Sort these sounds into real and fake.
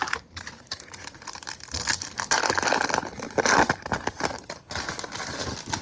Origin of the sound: real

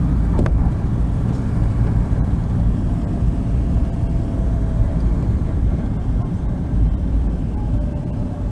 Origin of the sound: fake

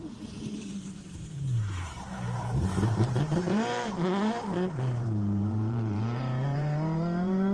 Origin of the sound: fake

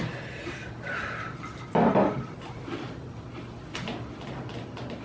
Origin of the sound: real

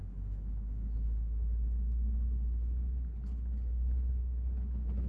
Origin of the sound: fake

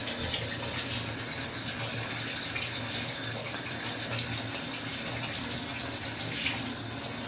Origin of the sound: real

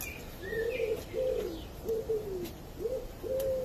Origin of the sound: real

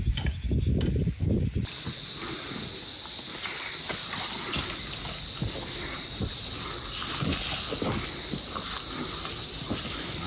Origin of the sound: real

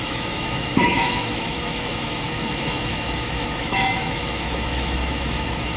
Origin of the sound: fake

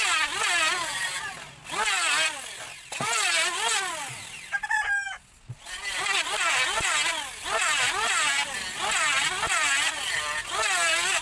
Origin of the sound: real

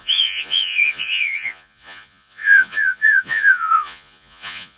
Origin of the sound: fake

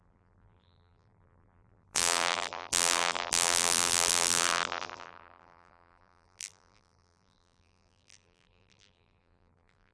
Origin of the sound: fake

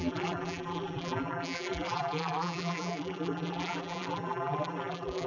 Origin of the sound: fake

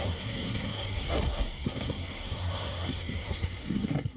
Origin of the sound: fake